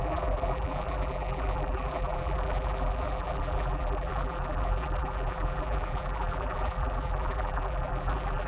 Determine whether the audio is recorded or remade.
remade